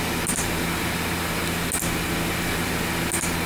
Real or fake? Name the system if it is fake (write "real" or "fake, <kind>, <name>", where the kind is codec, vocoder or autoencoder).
real